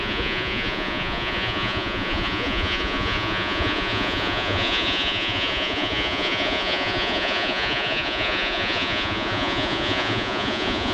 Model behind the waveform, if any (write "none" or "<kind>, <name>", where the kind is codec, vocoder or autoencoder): vocoder, Vocos